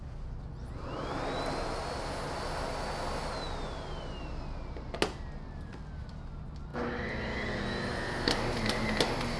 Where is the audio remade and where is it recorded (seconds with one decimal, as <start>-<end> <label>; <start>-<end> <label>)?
0.0-9.4 recorded